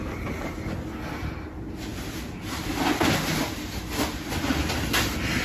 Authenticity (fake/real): real